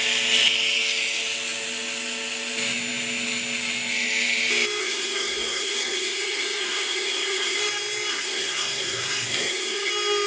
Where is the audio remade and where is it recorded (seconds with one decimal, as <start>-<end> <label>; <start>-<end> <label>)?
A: 0.0-4.8 recorded; 4.8-7.6 remade; 7.6-8.1 recorded; 8.1-9.9 remade; 9.9-10.3 recorded